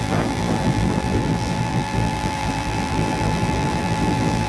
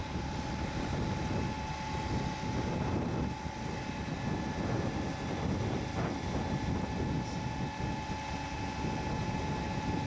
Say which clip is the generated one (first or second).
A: first